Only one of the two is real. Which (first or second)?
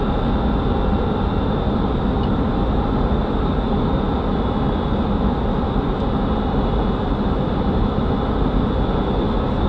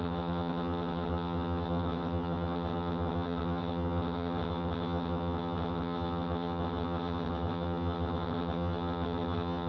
first